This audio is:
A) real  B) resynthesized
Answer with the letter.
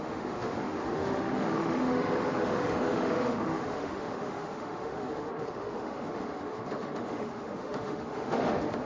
B